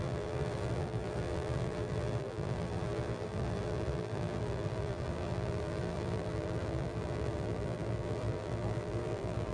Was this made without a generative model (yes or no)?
no